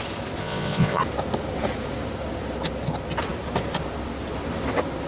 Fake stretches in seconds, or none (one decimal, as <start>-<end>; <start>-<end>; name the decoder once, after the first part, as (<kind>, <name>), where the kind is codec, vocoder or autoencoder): 0.4-1.0 (vocoder, Vocos)